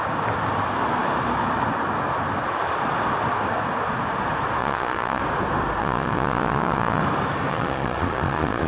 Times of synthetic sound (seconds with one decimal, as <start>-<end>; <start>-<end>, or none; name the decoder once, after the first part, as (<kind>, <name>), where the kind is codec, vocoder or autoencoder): 4.6-5.2 (vocoder, Vocos); 5.8-7.0; 7.5-8.7